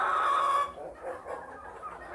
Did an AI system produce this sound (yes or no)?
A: no